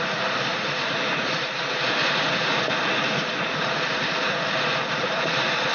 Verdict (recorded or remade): remade